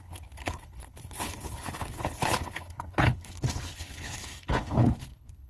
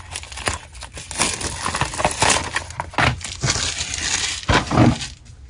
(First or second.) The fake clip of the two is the first